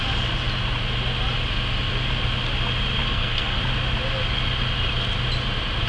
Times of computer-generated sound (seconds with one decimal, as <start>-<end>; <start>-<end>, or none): 3.0-3.6